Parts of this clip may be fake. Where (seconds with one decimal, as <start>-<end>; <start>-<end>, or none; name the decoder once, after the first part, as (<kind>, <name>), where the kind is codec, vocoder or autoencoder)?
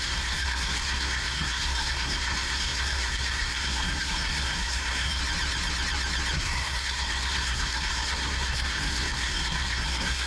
0.0-5.2 (codec, SNAC); 6.4-10.3